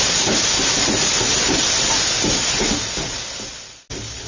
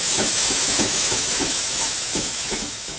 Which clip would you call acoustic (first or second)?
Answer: first